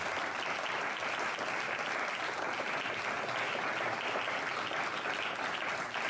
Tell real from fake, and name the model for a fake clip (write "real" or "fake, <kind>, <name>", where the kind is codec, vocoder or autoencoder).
real